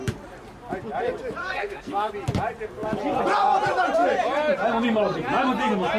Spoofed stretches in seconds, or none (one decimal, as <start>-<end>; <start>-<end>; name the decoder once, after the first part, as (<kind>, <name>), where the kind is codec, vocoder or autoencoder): 1.4-2.1 (codec, SNAC)